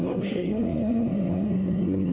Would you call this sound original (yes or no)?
no